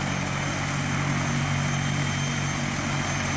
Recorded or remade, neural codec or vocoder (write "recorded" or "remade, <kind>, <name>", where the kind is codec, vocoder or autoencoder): recorded